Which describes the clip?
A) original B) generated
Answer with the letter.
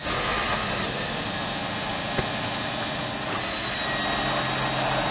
A